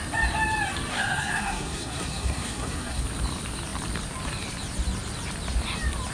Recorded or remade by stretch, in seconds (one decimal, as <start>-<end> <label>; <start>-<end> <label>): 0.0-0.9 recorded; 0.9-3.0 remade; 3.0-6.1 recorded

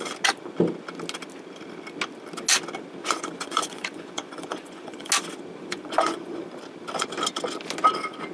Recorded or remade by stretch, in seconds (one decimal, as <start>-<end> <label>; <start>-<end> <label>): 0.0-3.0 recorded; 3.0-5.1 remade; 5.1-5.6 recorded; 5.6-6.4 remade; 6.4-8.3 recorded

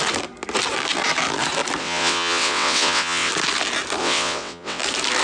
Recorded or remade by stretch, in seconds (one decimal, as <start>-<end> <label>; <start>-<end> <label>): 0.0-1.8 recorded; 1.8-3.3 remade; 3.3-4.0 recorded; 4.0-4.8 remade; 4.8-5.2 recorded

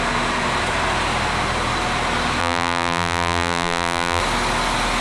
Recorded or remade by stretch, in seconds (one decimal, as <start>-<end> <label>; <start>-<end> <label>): 0.0-2.4 recorded; 2.4-4.2 remade; 4.2-5.0 recorded